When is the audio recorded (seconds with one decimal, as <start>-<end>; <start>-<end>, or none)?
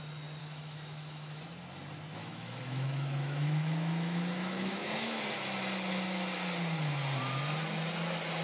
0.0-0.4; 1.4-2.2; 5.2-8.4